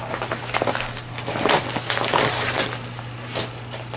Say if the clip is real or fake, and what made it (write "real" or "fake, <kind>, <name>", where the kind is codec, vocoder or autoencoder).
real